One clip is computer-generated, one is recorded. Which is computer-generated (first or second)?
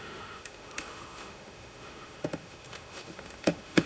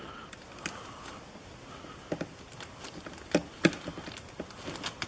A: first